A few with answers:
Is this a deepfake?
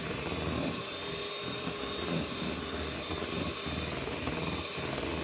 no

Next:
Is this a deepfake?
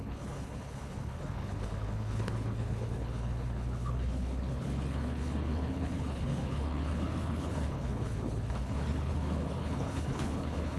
yes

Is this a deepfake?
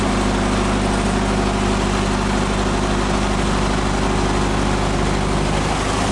no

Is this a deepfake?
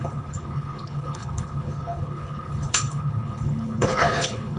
yes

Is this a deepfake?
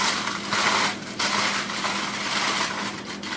no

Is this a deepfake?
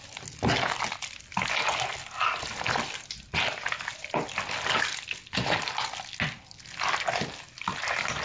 no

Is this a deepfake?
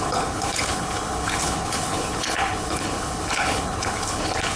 yes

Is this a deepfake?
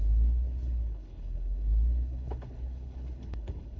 yes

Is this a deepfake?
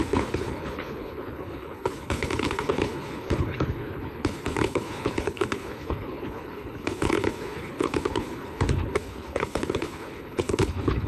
yes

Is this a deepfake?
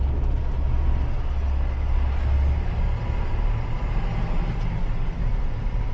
no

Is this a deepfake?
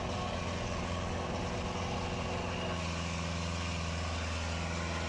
no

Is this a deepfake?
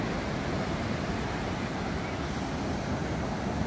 no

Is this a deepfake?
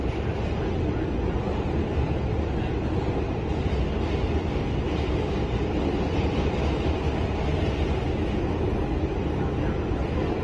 no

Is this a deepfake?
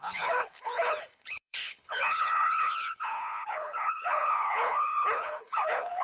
yes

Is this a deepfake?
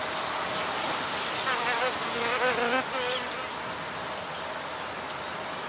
no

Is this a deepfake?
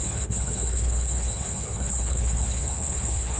yes